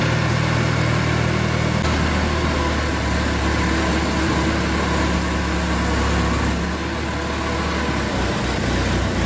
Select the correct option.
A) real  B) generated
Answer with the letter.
A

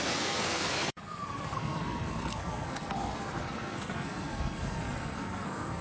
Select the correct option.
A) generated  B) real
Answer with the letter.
A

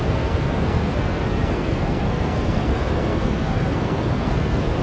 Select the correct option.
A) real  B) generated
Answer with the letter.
B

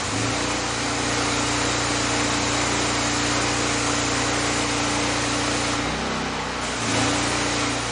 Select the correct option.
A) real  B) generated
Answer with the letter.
A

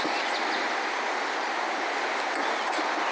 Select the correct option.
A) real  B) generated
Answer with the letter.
A